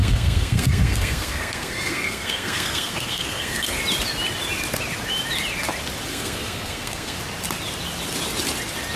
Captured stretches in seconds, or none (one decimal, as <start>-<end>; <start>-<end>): 3.8-6.1; 7.2-9.0